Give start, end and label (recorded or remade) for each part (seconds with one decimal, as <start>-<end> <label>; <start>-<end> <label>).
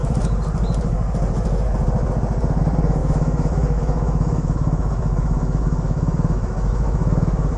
0.0-3.0 recorded; 3.0-7.6 remade